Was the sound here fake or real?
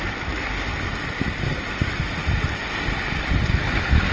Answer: real